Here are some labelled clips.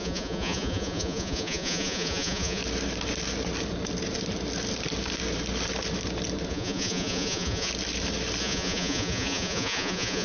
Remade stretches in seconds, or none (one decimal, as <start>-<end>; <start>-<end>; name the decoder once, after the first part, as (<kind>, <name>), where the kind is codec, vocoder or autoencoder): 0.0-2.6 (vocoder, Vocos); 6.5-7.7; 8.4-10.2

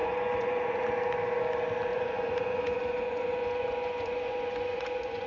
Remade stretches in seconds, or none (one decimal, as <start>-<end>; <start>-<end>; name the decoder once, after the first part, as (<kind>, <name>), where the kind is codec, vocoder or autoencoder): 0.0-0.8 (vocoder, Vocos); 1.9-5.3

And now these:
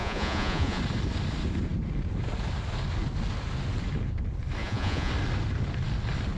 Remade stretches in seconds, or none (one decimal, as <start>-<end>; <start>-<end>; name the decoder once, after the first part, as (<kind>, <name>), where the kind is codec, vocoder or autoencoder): 0.0-0.8 (vocoder, Vocos); 4.6-5.1

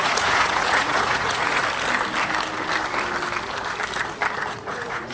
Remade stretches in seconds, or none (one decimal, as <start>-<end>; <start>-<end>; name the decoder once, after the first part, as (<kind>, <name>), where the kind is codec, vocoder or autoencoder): 0.0-1.6 (vocoder, Vocos); 4.5-5.1

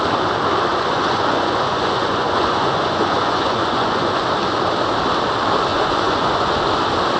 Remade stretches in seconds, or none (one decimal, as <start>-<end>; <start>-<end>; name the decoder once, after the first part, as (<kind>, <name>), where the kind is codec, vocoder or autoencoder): 0.7-4.2 (vocoder, Vocos); 5.7-6.6

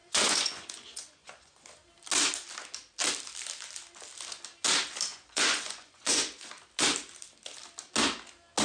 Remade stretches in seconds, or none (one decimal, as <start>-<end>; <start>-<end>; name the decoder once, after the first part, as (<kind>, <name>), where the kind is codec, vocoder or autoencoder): 0.0-1.7 (vocoder, Vocos); 5.1-6.5

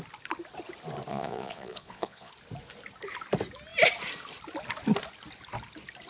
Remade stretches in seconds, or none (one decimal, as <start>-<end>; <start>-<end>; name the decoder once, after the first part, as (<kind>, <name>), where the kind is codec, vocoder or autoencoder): 1.1-2.3 (vocoder, Vocos)